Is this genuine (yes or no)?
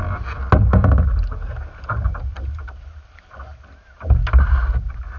yes